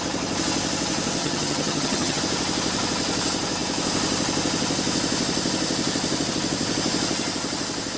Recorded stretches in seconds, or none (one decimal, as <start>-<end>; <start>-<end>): 0.0-1.2; 2.2-8.0